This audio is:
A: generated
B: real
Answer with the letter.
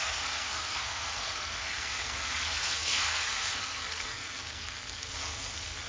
A